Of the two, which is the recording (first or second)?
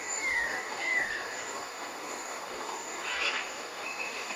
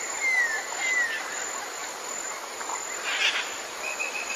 second